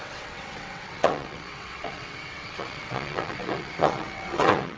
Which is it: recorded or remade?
remade